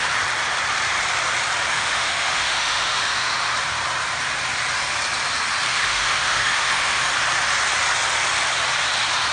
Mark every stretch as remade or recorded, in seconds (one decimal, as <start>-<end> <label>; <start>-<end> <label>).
0.0-1.7 recorded; 1.7-3.5 remade; 3.5-5.7 recorded; 5.7-7.1 remade; 7.1-9.3 recorded